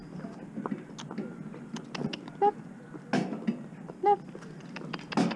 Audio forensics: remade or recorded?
recorded